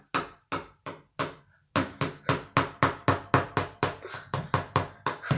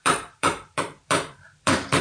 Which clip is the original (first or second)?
first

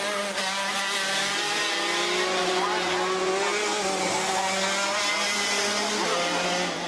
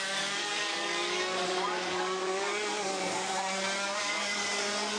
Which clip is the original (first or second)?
first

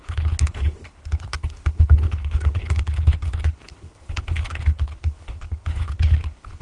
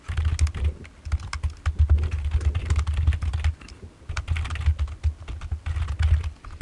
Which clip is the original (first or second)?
second